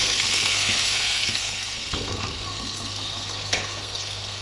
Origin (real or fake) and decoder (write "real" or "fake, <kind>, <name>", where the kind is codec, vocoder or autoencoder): fake, codec, SNAC